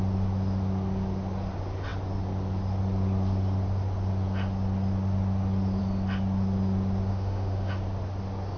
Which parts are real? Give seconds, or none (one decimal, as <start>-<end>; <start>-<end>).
0.0-7.1; 7.7-8.6